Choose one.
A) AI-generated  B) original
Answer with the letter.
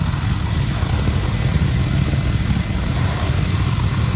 B